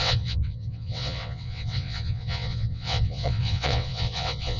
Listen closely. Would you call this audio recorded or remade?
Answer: remade